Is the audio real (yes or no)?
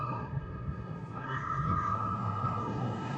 no